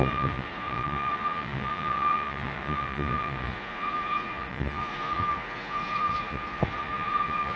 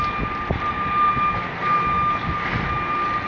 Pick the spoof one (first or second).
first